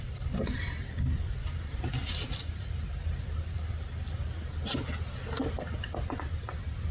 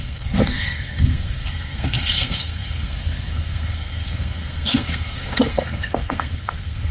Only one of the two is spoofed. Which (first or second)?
second